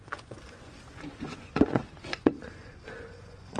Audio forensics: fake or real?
fake